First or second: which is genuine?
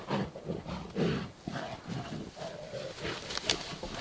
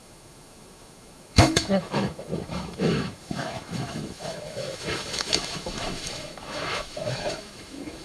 first